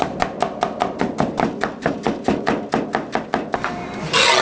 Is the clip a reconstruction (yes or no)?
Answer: no